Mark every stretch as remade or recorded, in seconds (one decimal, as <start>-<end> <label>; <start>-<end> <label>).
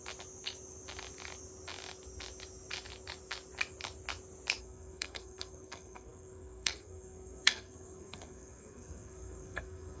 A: 0.0-4.6 recorded; 4.6-10.0 remade